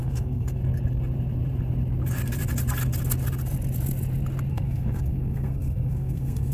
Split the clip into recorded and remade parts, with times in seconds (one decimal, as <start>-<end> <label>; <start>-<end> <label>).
0.0-0.6 remade; 0.6-4.5 recorded; 4.5-6.5 remade